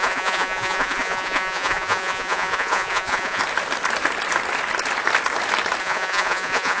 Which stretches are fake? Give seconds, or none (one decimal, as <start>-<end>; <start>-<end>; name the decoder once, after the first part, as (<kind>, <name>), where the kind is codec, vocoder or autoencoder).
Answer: 0.0-3.4 (vocoder, Vocos); 5.8-6.8

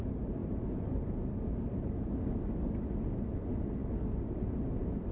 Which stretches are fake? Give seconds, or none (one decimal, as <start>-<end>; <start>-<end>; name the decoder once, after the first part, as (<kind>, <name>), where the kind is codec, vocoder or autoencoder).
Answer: none

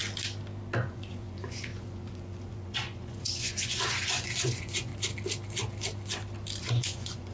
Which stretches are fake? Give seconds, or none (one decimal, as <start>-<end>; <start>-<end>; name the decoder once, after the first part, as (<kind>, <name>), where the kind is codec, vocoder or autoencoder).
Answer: 0.8-4.9 (vocoder, Vocos); 6.6-7.3

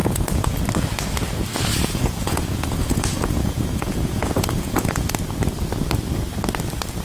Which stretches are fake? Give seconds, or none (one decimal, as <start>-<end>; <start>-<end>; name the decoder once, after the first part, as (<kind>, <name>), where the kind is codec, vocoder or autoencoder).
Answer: 0.0-0.6 (vocoder, Vocos); 1.7-5.1

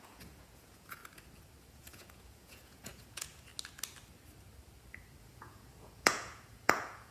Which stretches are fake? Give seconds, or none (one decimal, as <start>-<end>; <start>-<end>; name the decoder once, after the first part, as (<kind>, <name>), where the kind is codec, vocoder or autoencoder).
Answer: 0.0-1.0 (vocoder, Vocos); 1.7-3.5; 5.2-7.1

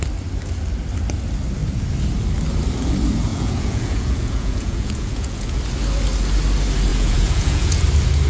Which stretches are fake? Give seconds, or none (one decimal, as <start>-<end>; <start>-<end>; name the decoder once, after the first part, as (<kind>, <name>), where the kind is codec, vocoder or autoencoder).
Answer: 3.3-5.6 (vocoder, Vocos); 6.9-7.8